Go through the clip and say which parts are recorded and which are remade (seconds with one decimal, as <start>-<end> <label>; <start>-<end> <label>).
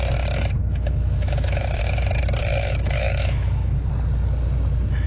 0.0-0.6 recorded; 0.6-1.8 remade; 1.8-2.4 recorded; 2.4-3.9 remade; 3.9-5.1 recorded